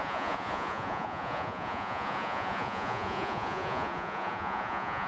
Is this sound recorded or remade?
remade